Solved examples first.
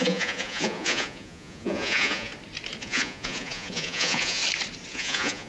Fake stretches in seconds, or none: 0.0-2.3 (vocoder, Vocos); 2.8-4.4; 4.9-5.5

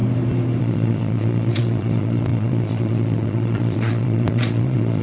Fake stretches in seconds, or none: 0.6-5.0 (vocoder, Vocos)

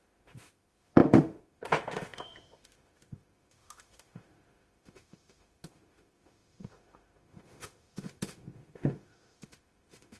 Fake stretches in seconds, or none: 0.0-10.2 (autoencoder, DAC-VAE)